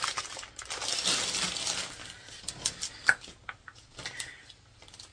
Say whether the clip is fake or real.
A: real